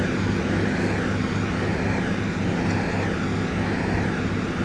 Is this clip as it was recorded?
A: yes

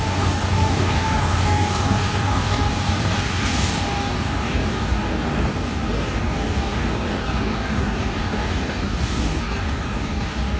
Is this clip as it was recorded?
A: no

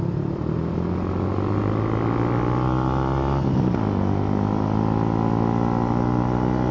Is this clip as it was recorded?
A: yes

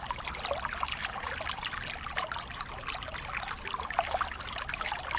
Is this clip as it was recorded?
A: yes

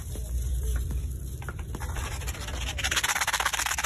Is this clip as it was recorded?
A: no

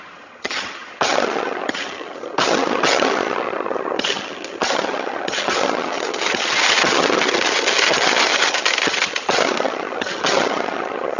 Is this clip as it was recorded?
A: no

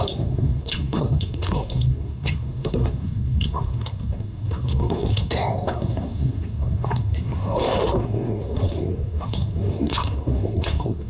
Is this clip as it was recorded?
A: no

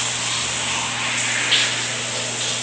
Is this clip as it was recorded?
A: yes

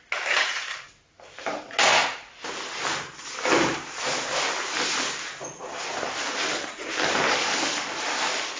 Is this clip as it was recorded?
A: yes